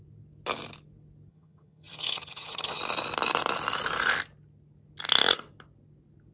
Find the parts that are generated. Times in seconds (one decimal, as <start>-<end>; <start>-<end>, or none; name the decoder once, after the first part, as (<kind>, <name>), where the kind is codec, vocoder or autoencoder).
1.3-2.8 (vocoder, HiFi-GAN)